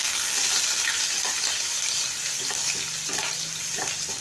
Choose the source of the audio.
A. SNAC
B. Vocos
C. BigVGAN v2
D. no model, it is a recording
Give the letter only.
D